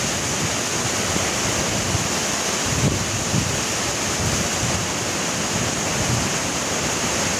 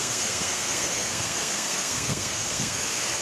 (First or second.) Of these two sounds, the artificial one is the second